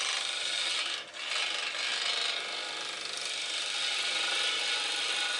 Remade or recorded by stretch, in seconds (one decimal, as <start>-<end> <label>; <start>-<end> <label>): 0.0-5.4 remade